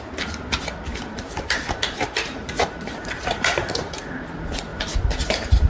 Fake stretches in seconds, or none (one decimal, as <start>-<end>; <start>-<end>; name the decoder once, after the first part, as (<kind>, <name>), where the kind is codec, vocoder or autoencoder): 0.9-4.1 (vocoder, BigVGAN v2); 4.7-5.7